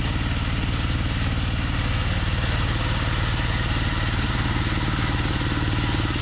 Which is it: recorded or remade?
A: recorded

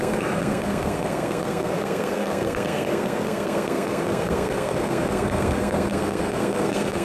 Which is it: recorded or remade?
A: remade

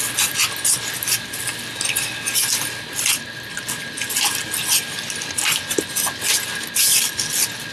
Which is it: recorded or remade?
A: recorded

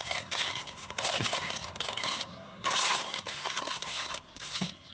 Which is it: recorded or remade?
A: remade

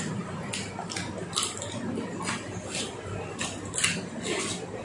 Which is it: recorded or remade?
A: recorded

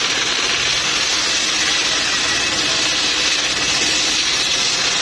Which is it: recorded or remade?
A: recorded